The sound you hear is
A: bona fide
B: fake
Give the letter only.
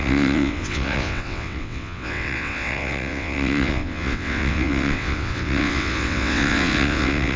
B